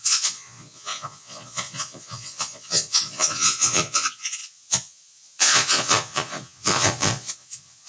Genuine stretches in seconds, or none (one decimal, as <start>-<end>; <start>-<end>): none